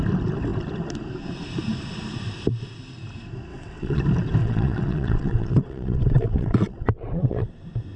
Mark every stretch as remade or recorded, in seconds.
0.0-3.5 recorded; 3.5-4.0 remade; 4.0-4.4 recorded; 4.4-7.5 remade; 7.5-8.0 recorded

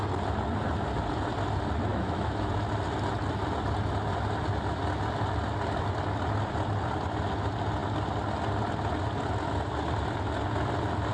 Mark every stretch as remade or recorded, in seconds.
0.0-1.9 recorded; 1.9-2.5 remade; 2.5-11.1 recorded

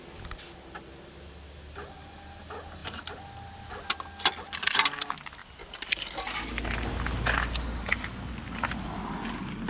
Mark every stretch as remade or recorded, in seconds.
0.0-9.7 recorded

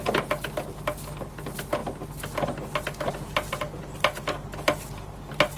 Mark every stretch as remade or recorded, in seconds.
0.0-5.6 recorded